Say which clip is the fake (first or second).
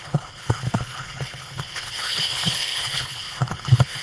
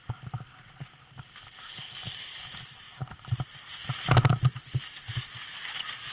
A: first